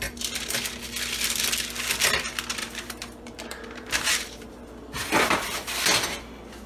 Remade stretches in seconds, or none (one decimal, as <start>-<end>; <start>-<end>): 2.6-4.7